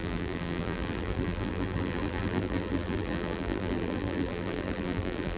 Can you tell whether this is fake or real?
fake